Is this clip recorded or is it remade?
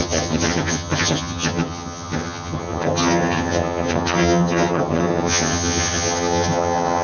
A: remade